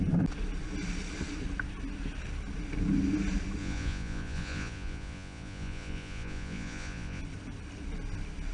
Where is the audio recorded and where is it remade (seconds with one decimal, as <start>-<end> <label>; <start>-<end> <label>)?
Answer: 0.0-3.6 recorded; 3.6-7.2 remade; 7.2-8.5 recorded